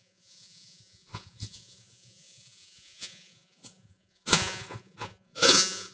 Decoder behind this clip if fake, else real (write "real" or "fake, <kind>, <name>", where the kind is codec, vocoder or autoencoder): fake, vocoder, Vocos